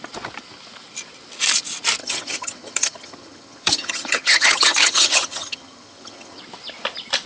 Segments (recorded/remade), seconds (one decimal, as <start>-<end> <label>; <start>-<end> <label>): 0.0-2.0 recorded; 2.0-6.4 remade; 6.4-7.3 recorded